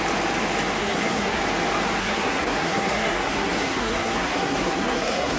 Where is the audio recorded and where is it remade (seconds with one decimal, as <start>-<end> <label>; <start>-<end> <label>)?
0.0-0.8 recorded; 0.8-1.4 remade; 1.4-2.0 recorded; 2.0-5.4 remade